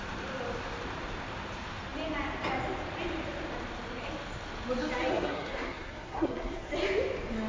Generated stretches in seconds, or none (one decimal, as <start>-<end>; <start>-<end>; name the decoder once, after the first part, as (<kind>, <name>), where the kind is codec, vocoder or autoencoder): 5.1-6.7 (codec, SNAC)